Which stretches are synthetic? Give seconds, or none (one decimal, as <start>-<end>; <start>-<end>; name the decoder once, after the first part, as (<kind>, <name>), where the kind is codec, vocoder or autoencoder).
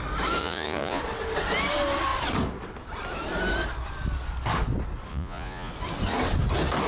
0.4-1.0 (vocoder, Vocos); 5.1-5.7